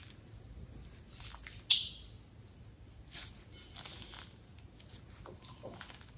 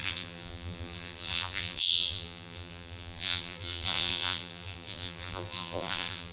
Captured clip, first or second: first